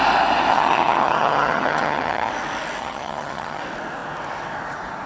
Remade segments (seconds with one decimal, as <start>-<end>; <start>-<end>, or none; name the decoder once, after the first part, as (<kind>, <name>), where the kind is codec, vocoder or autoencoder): 0.5-2.3 (vocoder, HiFi-GAN); 2.8-3.6